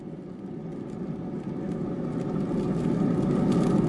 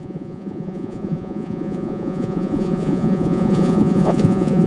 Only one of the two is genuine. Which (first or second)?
first